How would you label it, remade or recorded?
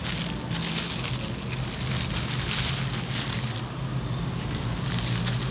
recorded